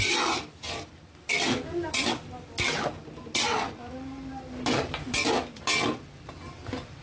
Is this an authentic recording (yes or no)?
yes